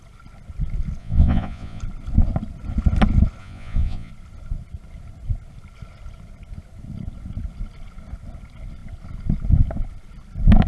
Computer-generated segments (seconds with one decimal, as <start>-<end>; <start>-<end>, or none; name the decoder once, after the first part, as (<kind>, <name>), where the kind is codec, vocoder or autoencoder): 1.0-1.8 (vocoder, Vocos); 3.4-4.1